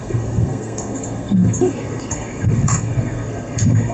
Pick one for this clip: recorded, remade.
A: remade